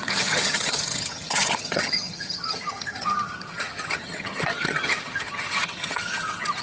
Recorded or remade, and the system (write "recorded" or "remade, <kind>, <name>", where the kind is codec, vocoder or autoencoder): remade, vocoder, HiFi-GAN